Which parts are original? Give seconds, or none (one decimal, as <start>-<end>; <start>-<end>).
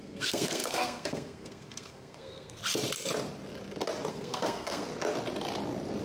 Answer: 2.6-4.1; 4.9-6.0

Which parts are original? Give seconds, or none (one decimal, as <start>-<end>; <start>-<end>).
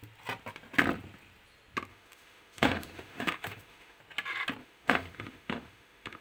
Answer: 0.0-1.9; 4.0-4.6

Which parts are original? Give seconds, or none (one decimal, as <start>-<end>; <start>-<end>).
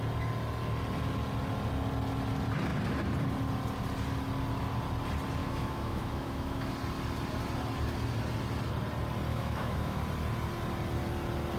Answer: 0.0-5.4; 6.7-9.3; 10.0-11.6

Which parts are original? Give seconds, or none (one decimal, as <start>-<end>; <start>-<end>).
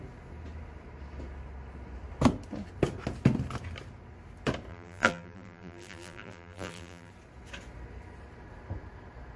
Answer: 0.0-4.7; 7.1-9.4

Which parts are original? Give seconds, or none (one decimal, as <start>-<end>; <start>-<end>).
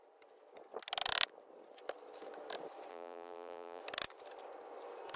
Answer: 0.0-2.9; 3.8-5.2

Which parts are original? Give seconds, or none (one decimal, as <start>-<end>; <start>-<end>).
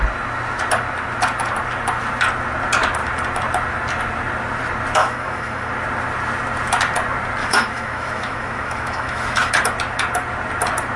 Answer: 0.0-5.0; 5.7-7.4; 9.5-11.0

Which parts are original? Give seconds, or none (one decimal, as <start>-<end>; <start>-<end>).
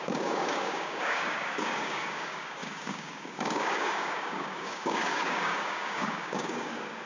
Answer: none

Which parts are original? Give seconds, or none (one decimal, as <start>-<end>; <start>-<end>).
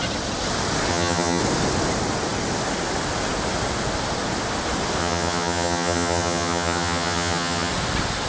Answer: 0.0-0.9; 1.4-5.0; 7.7-8.3